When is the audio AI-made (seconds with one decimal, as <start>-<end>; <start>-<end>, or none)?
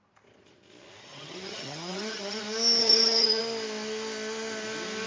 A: 1.0-2.4; 2.8-3.4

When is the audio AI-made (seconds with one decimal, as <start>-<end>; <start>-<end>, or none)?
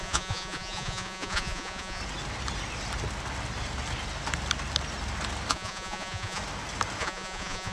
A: 0.0-2.0; 5.5-6.4; 7.0-7.7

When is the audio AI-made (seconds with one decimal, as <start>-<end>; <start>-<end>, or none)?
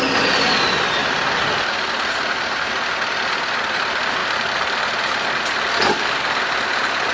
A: 1.0-2.7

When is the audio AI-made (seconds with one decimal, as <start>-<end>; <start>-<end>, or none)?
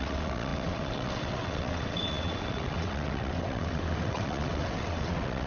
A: 0.0-5.5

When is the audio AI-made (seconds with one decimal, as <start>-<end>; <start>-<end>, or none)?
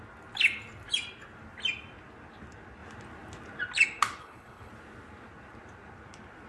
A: 4.2-4.7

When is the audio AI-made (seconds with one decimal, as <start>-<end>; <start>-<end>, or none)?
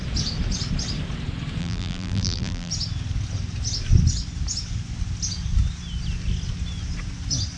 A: 1.6-2.7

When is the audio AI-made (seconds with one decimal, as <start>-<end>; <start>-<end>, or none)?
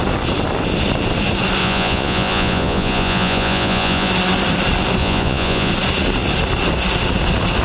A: 1.6-4.1; 5.0-5.7